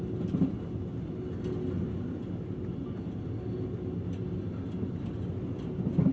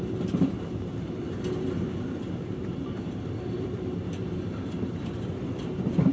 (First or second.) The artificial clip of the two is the second